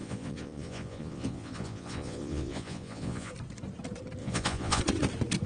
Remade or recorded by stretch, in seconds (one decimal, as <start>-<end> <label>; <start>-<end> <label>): 0.0-3.3 remade; 3.3-4.2 recorded; 4.2-4.8 remade; 4.8-5.5 recorded

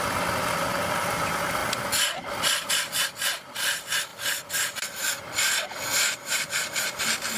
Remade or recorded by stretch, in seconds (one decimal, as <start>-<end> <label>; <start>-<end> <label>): 0.0-7.4 recorded

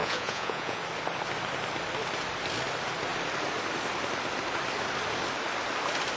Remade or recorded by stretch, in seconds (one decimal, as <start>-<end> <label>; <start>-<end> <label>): 0.0-0.8 remade; 0.8-6.2 recorded

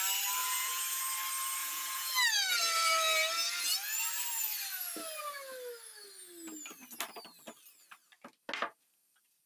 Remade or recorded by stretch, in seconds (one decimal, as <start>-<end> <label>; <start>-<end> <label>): 0.0-0.4 recorded; 0.4-1.0 remade; 1.0-1.6 recorded; 1.6-2.1 remade; 2.1-9.5 recorded

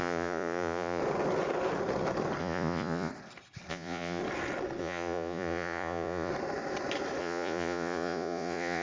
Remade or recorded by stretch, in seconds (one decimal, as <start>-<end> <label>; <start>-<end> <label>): 0.0-1.0 remade; 1.0-2.4 recorded; 2.4-3.1 remade; 3.1-3.7 recorded; 3.7-4.2 remade; 4.2-4.8 recorded; 4.8-6.3 remade; 6.3-7.2 recorded; 7.2-8.8 remade

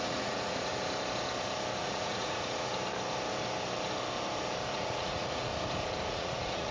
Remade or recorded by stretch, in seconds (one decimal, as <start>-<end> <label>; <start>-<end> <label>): 0.0-0.7 remade; 0.7-1.8 recorded; 1.8-2.7 remade; 2.7-4.7 recorded; 4.7-5.5 remade; 5.5-6.1 recorded; 6.1-6.7 remade